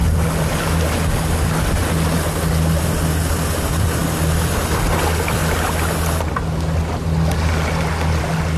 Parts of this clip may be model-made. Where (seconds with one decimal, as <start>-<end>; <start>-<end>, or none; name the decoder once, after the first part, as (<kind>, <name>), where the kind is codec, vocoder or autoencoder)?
none